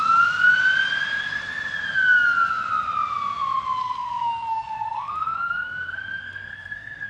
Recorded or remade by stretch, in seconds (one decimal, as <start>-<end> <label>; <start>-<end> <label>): 0.0-3.8 recorded; 3.8-7.1 remade